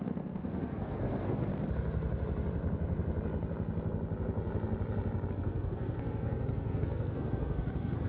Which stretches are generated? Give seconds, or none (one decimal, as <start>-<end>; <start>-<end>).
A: 0.0-1.5; 5.3-8.1